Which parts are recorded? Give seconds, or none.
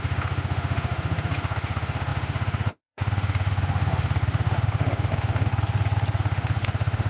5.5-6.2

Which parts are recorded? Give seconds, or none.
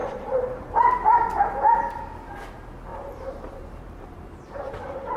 1.3-2.9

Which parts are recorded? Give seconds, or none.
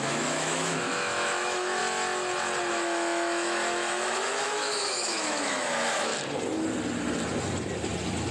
1.8-2.7; 6.1-8.3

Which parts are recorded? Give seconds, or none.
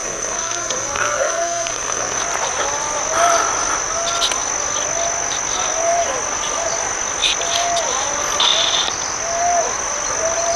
2.2-10.6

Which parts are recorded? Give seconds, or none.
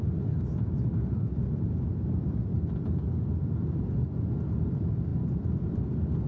0.0-5.1; 5.8-6.3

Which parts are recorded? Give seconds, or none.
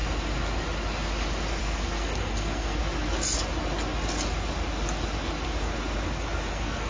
0.0-1.6; 2.8-6.5